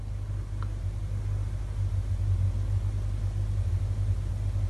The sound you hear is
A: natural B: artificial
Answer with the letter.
A